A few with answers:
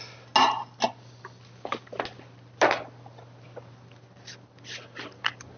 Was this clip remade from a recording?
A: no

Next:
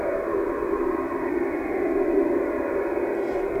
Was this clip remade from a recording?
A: no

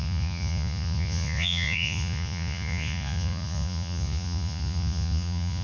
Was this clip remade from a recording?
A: yes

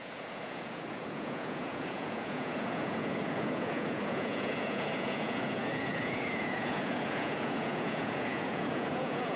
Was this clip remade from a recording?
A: yes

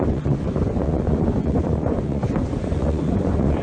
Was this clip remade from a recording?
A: yes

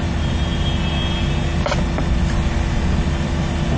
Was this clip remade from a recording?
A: no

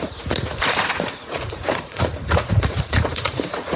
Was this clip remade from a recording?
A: yes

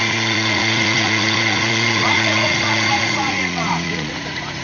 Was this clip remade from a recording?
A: yes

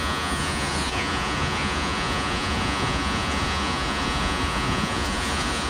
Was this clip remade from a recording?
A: yes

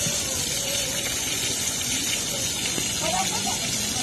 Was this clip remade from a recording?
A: yes